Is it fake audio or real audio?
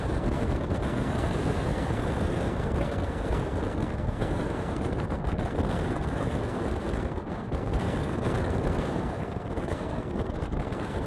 fake